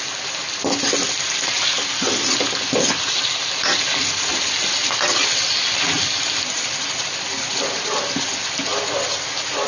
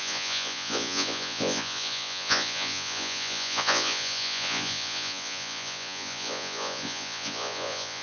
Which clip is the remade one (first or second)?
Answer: second